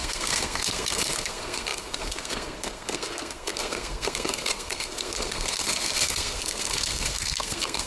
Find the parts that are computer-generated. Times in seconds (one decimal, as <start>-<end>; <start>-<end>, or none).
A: 0.0-7.9